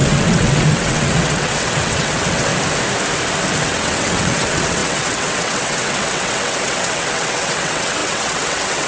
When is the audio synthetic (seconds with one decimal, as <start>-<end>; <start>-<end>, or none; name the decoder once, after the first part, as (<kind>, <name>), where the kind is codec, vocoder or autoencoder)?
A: 0.0-2.5 (vocoder, WaveNeXt); 3.6-8.9